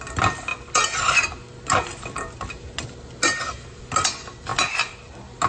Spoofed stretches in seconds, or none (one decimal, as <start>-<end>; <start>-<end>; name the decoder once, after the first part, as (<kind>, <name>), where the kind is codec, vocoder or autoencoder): none